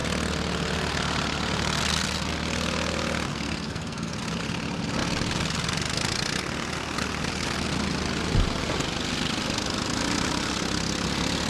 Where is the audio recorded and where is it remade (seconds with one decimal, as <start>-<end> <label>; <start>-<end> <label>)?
0.0-3.3 recorded; 3.3-4.4 remade; 4.4-11.5 recorded